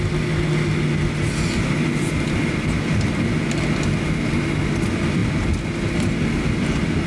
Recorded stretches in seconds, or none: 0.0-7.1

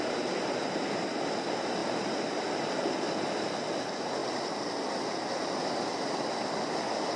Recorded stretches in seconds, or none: 0.0-7.2

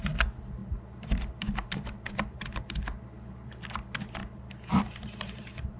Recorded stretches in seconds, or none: 0.0-0.6; 2.6-4.2

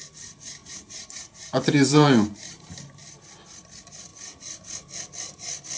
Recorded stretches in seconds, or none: 0.0-0.6; 2.9-5.8

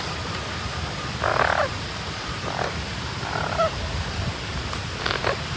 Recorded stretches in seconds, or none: 0.0-5.6

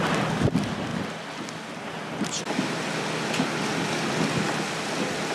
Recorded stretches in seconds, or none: 0.0-5.3

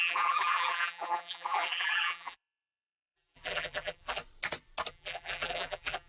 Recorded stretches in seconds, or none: 4.2-4.9